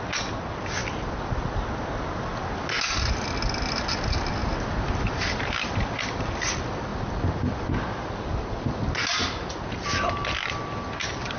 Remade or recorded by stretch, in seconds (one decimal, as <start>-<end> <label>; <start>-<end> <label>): 0.0-11.4 recorded